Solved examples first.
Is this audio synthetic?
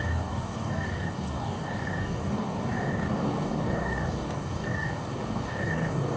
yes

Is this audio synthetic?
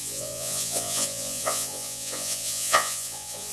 yes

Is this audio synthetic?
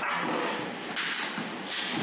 no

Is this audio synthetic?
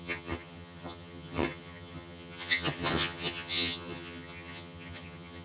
yes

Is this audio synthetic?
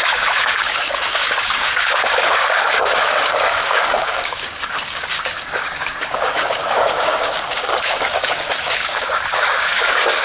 yes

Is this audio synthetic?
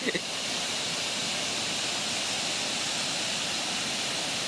no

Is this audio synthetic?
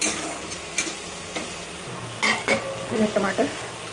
no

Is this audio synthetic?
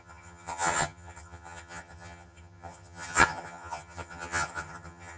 yes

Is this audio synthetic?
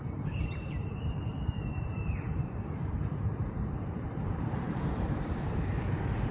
yes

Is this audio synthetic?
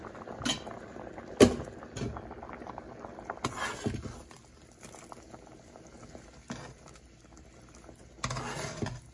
no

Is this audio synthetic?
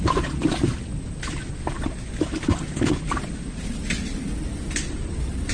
no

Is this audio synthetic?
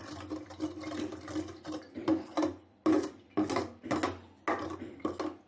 no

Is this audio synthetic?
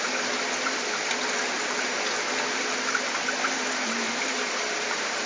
no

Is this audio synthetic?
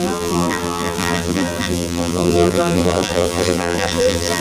yes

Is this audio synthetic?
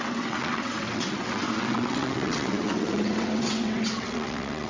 yes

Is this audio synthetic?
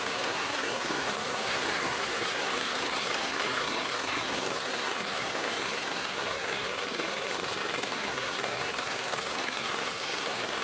yes